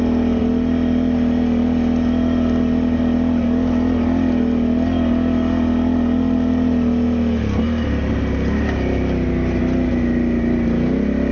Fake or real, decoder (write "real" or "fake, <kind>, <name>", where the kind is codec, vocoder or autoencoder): real